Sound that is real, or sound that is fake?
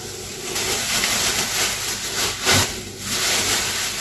real